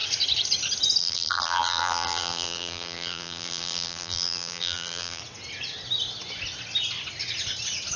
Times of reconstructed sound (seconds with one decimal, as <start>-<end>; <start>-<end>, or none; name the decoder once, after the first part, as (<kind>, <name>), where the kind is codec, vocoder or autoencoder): 1.0-5.2 (vocoder, BigVGAN v2)